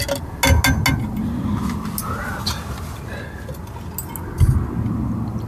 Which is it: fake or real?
real